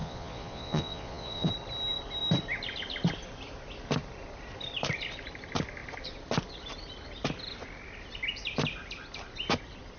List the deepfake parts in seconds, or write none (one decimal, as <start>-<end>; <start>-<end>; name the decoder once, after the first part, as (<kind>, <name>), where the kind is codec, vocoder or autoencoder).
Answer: 0.0-1.5 (vocoder, Vocos)